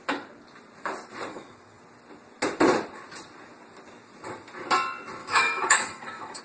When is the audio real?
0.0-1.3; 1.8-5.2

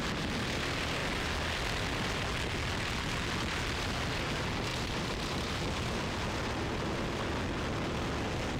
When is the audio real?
0.0-4.7; 7.3-8.6

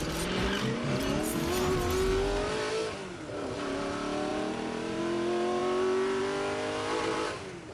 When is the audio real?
0.0-4.3; 5.0-7.7

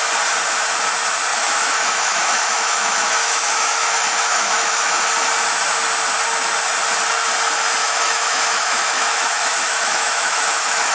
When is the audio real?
0.0-1.3; 5.0-7.8

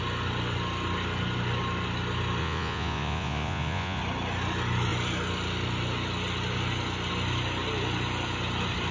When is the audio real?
0.0-2.4; 4.0-8.9

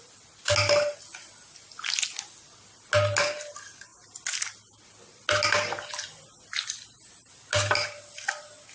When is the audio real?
0.0-8.7